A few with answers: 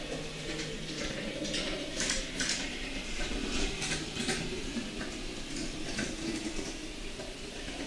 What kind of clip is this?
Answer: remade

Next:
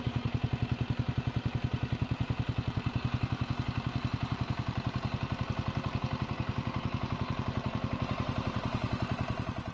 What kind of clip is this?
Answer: remade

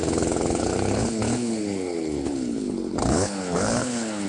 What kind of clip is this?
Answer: remade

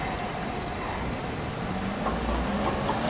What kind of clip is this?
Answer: recorded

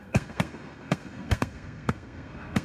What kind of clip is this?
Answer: remade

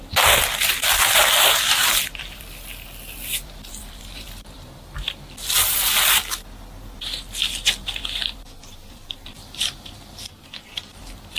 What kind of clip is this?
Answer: remade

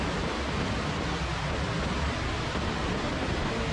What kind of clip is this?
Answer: recorded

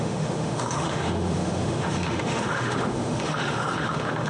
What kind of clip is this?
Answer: remade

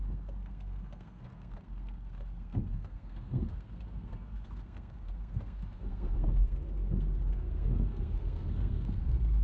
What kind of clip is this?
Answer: remade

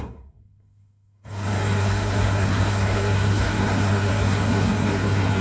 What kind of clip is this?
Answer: remade